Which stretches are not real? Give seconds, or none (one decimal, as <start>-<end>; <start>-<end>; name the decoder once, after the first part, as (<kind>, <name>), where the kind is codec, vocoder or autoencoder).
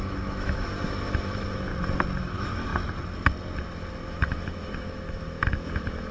0.0-1.7 (autoencoder, DAC-VAE); 2.2-2.7; 4.1-6.1